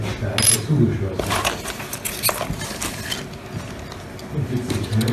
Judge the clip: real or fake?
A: real